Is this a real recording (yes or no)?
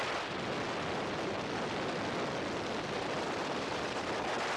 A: yes